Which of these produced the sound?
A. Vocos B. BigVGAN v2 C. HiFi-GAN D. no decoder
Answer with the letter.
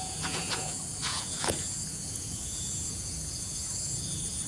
A